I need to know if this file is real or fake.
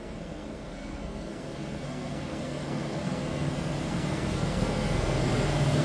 fake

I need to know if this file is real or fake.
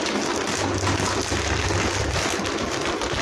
real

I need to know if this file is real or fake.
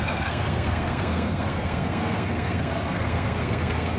fake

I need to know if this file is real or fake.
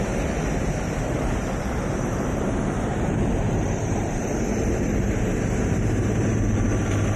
fake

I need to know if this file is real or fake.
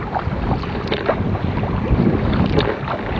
real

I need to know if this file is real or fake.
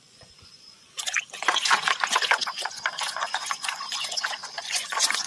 fake